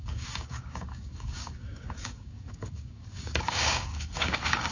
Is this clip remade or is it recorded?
remade